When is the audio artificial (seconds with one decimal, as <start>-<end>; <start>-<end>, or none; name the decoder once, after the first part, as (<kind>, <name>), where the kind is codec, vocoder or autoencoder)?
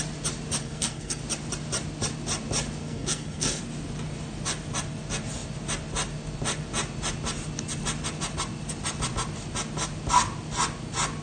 0.6-1.2 (codec, SNAC); 2.8-3.6